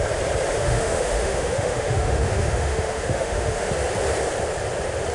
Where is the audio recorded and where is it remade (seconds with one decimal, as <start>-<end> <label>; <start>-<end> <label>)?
0.0-0.6 recorded; 0.6-3.7 remade; 3.7-5.1 recorded